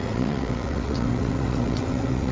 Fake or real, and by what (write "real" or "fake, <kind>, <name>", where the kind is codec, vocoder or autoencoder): fake, vocoder, WaveNeXt